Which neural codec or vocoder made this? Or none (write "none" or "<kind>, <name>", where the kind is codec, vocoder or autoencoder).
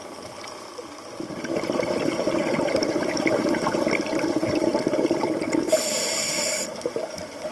none